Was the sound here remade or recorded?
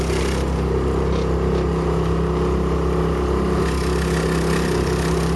recorded